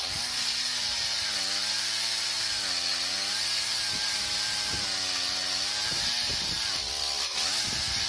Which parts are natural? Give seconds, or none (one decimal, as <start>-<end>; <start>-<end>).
0.0-8.1